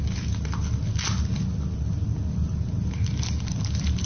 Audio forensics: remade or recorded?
recorded